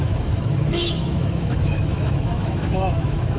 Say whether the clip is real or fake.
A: fake